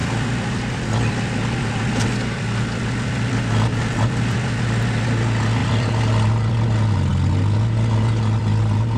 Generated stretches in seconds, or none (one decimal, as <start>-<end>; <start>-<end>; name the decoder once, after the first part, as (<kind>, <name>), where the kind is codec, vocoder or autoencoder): 0.0-4.6 (vocoder, BigVGAN v2); 5.6-6.5